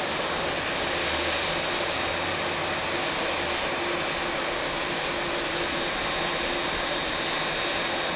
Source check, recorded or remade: recorded